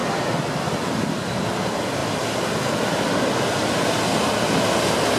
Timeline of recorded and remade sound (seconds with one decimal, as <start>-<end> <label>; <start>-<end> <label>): 0.0-5.2 recorded